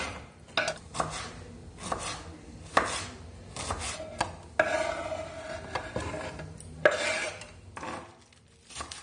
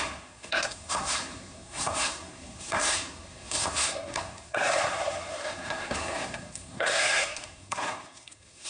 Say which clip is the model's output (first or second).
second